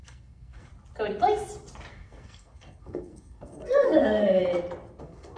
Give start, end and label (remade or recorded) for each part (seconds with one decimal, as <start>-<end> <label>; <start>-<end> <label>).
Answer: 0.0-0.7 remade; 0.7-1.9 recorded; 1.9-4.4 remade; 4.4-5.0 recorded; 5.0-5.4 remade